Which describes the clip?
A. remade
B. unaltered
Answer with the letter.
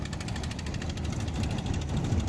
B